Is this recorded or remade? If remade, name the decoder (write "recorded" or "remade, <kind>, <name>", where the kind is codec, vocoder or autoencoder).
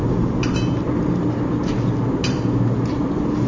recorded